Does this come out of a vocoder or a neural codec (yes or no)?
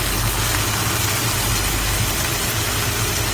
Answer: no